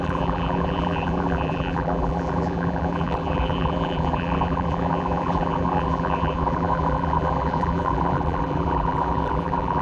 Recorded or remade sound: remade